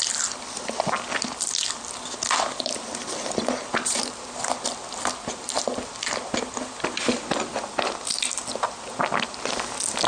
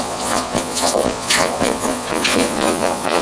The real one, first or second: first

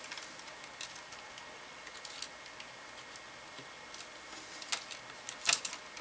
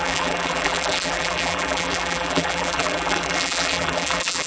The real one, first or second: first